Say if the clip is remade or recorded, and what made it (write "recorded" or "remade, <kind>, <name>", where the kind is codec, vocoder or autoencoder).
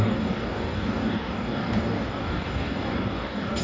remade, codec, DAC